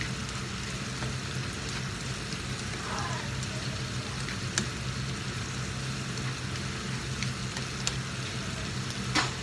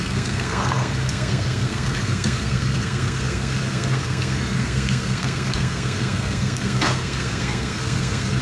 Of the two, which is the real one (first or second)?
first